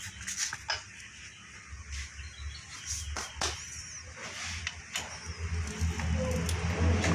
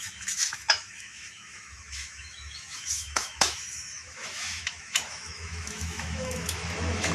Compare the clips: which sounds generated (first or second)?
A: second